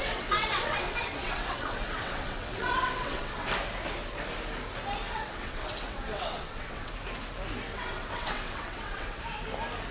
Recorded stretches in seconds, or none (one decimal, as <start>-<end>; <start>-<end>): 3.5-5.1; 6.9-7.7; 9.2-9.9

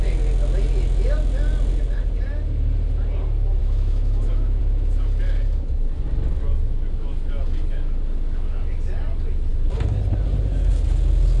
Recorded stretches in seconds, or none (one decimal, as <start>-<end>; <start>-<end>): 0.0-3.6; 4.6-11.4

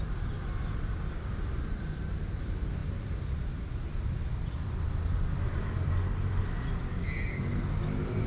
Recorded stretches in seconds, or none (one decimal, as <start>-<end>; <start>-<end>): none